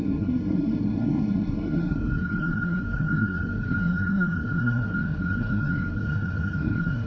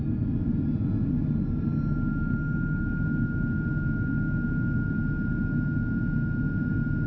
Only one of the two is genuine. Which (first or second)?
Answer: second